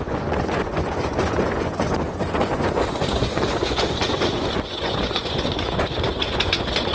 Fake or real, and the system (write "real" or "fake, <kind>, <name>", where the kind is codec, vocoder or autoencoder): fake, vocoder, Vocos